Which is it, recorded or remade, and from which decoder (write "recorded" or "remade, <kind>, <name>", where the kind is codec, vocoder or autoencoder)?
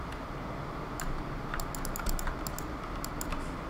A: recorded